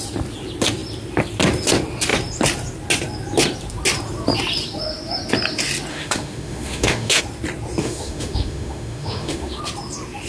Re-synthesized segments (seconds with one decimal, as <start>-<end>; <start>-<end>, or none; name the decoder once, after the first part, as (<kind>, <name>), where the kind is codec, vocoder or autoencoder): 5.9-7.2 (autoencoder, DAC-VAE); 7.8-9.6